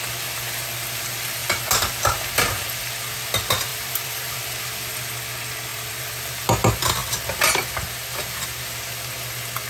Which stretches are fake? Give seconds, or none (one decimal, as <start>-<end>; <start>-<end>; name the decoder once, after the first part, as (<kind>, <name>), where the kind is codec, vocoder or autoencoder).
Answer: 3.7-4.4 (vocoder, BigVGAN v2); 5.7-6.3